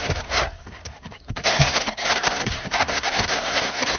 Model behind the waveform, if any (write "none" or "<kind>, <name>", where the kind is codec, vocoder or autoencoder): codec, SNAC